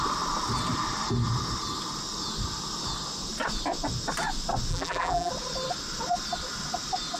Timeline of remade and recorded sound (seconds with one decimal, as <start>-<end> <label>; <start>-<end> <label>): 0.0-4.7 recorded; 4.7-5.3 remade; 5.3-7.2 recorded